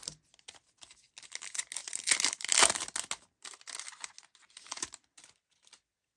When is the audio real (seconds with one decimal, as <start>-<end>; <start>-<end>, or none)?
0.0-6.2